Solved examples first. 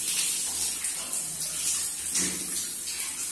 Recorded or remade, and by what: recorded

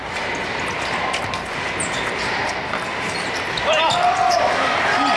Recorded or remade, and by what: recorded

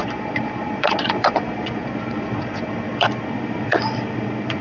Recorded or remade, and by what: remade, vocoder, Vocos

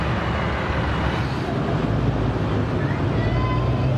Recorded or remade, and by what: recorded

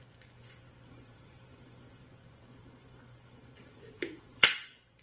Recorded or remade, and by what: remade, vocoder, Vocos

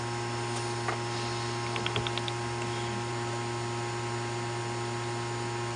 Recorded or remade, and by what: recorded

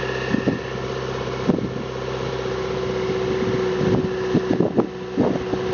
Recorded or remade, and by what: recorded